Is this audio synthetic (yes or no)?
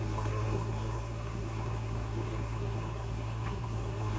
yes